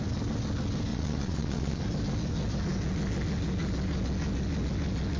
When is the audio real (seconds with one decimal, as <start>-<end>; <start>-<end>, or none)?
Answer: 0.0-0.9; 1.8-5.2